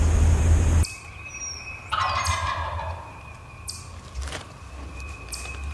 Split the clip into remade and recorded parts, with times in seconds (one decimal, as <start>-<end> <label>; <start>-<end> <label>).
0.0-5.7 recorded